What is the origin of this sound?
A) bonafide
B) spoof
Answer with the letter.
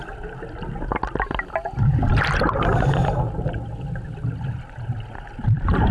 A